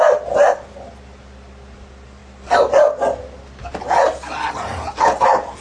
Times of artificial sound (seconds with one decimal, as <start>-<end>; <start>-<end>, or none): none